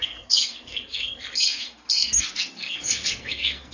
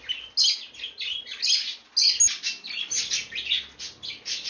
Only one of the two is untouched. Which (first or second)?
second